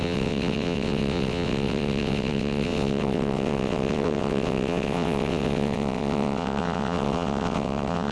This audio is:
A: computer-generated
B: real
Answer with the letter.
A